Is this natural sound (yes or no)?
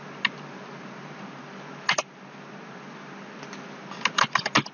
yes